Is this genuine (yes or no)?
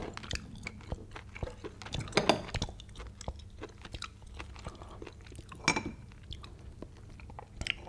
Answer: yes